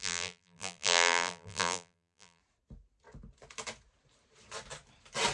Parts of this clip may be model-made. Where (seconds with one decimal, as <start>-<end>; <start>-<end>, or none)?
0.0-2.4